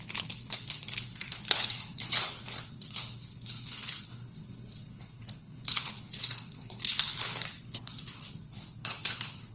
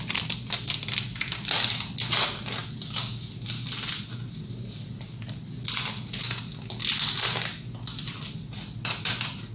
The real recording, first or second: second